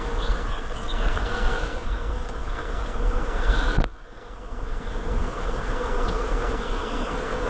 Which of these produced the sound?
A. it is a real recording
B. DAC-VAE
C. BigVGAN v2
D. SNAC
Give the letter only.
D